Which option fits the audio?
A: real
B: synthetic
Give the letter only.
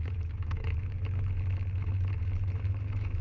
B